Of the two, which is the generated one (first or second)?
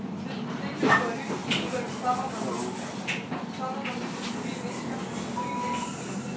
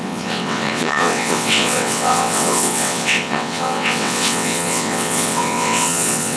second